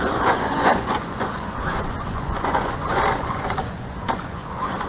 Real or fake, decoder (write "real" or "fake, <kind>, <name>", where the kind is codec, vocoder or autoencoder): fake, vocoder, Vocos